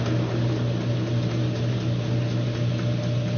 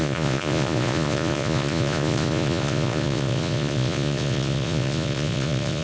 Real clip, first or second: first